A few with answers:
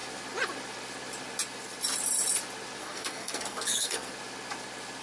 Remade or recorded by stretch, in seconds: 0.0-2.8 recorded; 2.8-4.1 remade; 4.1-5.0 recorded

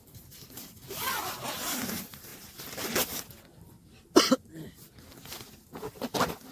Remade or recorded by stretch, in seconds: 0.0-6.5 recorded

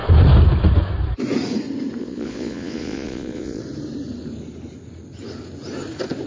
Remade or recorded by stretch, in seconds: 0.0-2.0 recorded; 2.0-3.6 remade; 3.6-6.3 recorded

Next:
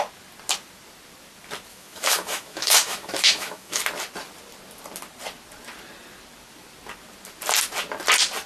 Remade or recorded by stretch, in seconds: 0.0-1.7 recorded; 1.7-3.8 remade; 3.8-8.5 recorded

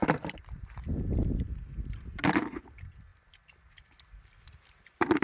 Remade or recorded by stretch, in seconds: 0.0-5.2 recorded